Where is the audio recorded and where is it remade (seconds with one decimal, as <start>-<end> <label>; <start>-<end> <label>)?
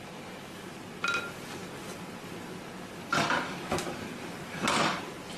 0.0-5.4 recorded